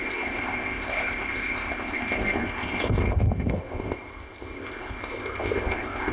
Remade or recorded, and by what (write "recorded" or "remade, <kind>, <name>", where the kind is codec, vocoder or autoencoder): remade, codec, ZipCodec